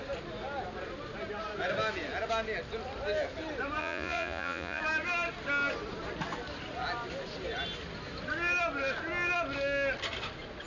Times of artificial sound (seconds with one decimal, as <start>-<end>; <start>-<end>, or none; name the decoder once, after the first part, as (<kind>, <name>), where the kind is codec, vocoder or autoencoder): 3.8-4.8 (vocoder, Vocos)